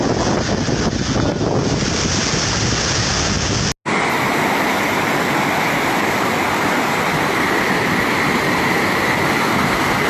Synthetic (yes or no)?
no